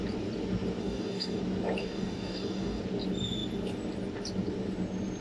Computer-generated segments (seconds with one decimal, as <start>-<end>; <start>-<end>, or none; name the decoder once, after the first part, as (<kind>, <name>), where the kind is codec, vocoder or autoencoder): 0.8-1.4 (codec, DAC); 1.8-2.8